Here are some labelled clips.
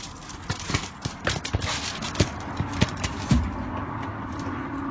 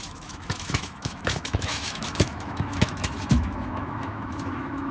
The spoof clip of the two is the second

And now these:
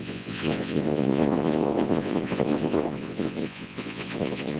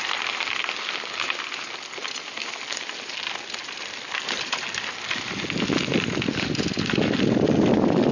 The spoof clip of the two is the first